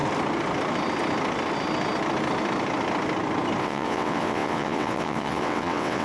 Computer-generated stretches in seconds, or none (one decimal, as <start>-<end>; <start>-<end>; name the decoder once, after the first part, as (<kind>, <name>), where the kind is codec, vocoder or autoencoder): 3.6-6.0 (vocoder, WaveNeXt)

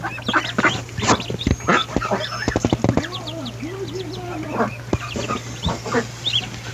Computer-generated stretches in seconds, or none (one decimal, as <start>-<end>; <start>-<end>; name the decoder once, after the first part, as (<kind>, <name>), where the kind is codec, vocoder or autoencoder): 1.8-4.7 (vocoder, BigVGAN v2)

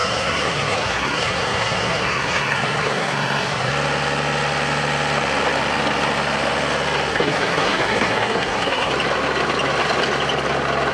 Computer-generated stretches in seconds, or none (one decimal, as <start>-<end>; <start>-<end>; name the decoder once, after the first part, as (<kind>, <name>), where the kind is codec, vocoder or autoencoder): 0.0-3.7 (codec, SNAC); 7.1-8.9

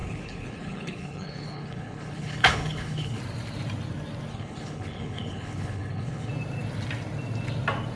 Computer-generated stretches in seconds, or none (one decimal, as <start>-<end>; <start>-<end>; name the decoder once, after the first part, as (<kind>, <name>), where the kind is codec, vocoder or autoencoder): 0.0-3.2 (codec, HILCodec); 4.3-6.3

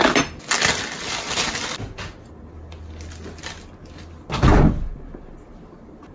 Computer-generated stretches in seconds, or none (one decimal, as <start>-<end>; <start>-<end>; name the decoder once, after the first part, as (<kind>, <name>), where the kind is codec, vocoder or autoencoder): none

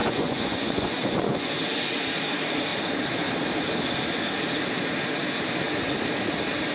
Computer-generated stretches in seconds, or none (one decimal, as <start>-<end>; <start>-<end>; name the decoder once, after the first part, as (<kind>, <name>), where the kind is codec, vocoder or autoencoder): 0.0-1.5 (vocoder, Vocos)

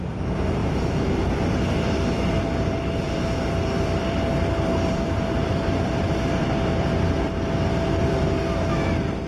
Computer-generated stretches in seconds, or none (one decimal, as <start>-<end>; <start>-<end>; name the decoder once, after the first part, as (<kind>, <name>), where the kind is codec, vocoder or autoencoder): 0.0-9.3 (vocoder, BigVGAN v2)

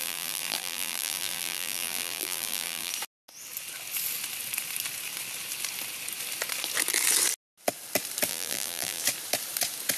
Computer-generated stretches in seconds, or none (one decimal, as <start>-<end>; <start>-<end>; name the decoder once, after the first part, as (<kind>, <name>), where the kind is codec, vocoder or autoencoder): 0.0-2.9 (vocoder, BigVGAN v2); 8.3-9.0